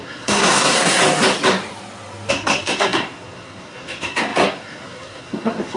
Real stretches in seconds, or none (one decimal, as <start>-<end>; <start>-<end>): 1.0-2.3